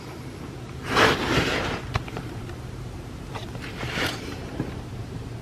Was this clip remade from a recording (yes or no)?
yes